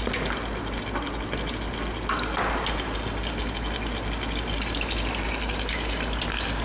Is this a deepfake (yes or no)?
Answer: no